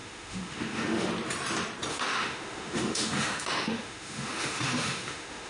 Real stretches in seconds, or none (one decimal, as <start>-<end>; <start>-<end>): 1.1-1.9